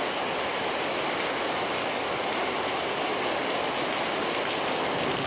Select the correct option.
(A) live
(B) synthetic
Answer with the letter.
A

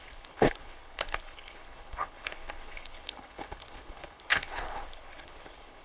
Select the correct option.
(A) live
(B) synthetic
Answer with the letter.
B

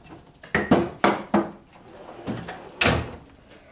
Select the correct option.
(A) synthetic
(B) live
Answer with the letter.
B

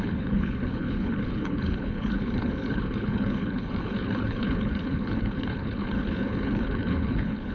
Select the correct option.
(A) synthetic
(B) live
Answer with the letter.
A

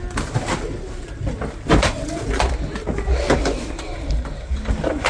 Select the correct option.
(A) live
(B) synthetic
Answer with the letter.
A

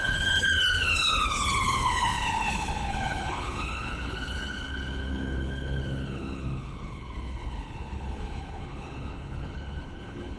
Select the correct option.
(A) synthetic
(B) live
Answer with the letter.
A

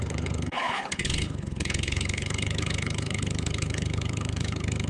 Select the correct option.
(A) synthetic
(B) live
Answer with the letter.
A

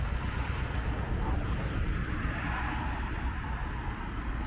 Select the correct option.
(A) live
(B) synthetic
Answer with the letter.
A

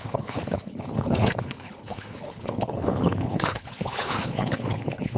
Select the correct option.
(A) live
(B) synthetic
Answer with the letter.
B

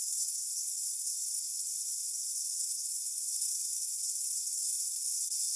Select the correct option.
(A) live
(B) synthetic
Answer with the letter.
B